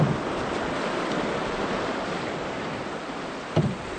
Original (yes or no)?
yes